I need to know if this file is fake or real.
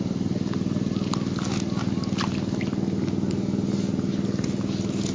real